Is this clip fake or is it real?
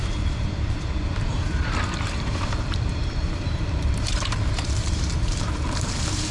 fake